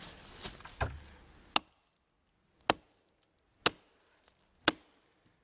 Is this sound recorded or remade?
recorded